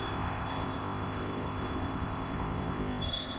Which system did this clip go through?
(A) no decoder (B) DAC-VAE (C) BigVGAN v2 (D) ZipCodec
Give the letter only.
D